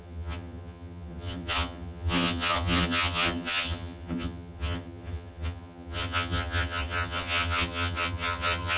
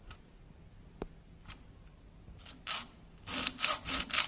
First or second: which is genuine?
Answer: second